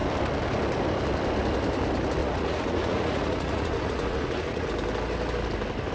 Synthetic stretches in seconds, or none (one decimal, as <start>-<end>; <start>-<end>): 2.2-4.7